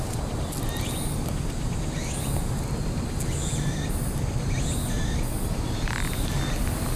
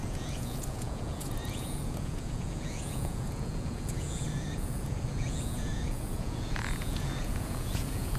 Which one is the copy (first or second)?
second